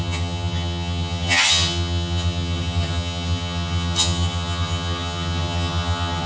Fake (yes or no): yes